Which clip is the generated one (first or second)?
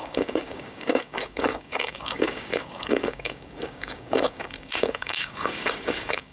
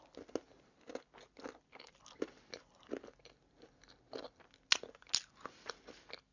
first